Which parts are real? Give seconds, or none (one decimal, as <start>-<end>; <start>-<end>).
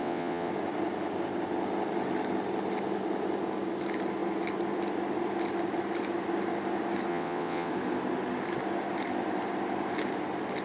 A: 0.5-7.1; 7.7-10.6